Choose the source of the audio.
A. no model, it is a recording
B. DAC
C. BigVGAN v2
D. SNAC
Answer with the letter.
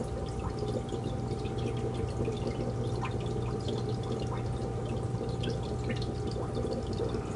A